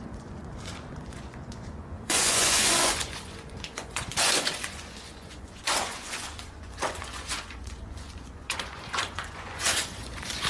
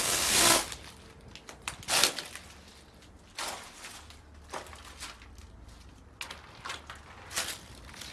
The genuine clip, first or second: second